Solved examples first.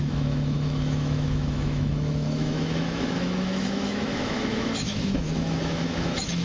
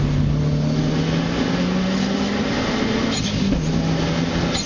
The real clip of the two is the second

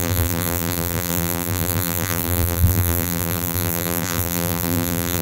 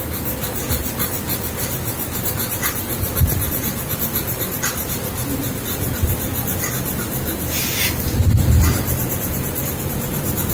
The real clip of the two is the second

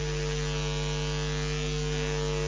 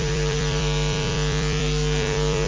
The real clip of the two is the first